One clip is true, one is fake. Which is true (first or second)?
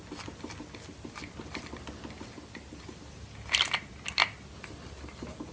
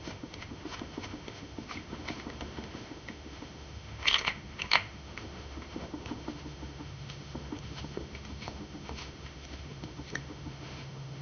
first